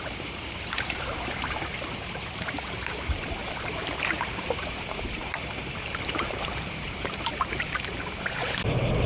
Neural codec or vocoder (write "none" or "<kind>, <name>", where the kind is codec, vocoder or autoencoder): vocoder, BigVGAN v2